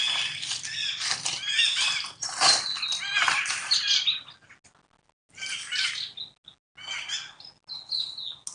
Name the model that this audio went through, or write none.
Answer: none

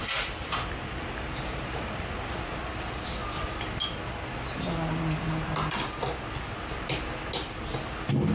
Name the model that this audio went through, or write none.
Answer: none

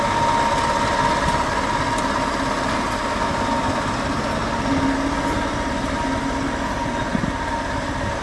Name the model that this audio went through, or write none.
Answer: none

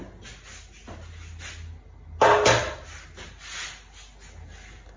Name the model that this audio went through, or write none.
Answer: none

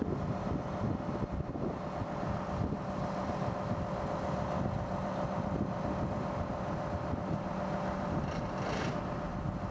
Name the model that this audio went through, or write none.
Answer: none